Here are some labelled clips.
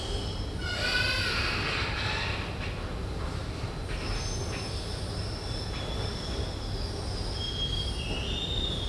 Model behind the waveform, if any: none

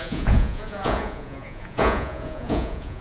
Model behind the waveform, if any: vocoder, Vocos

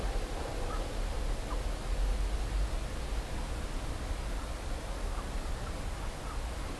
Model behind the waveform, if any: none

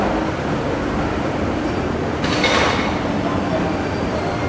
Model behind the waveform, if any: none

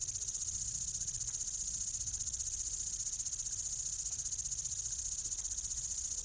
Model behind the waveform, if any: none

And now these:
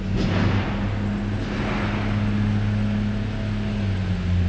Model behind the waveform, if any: none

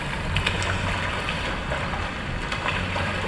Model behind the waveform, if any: none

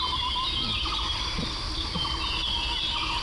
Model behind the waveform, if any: none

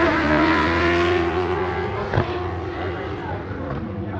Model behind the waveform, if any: vocoder, Vocos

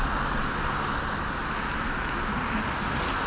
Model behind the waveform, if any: none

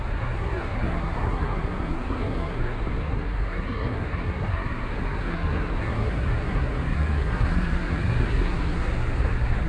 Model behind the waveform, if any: codec, SNAC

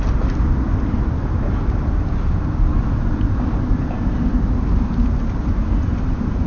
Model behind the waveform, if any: none